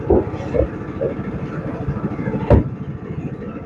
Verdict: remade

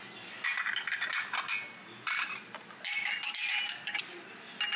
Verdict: recorded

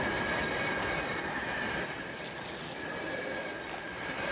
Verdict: recorded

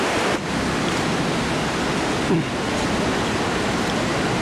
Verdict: recorded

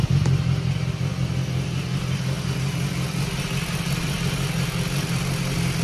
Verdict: recorded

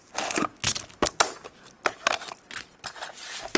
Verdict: recorded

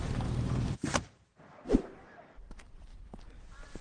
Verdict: remade